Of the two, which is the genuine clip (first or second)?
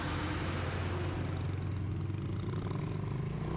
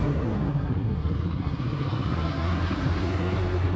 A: first